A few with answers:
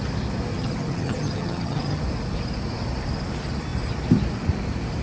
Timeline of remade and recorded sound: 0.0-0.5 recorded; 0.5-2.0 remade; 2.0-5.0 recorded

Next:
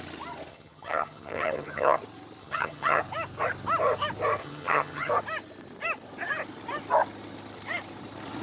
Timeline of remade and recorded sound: 0.0-0.5 recorded; 0.5-2.0 remade; 2.0-2.4 recorded; 2.4-3.0 remade; 3.0-4.4 recorded; 4.4-5.1 remade; 5.1-8.4 recorded

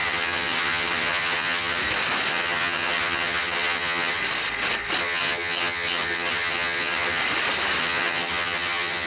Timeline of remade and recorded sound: 0.0-1.8 remade; 1.8-2.3 recorded; 2.3-4.2 remade; 4.2-5.0 recorded; 5.0-7.2 remade; 7.2-7.8 recorded; 7.8-9.1 remade

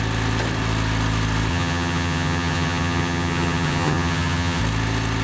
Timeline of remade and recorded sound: 0.0-1.5 recorded; 1.5-4.6 remade; 4.6-5.2 recorded

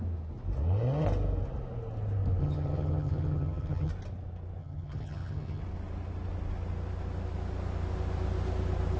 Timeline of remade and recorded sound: 0.0-2.4 recorded; 2.4-3.9 remade; 3.9-4.6 recorded; 4.6-5.6 remade; 5.6-9.0 recorded

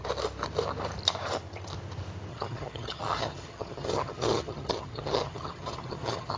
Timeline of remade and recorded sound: 0.0-2.3 recorded; 2.3-6.4 remade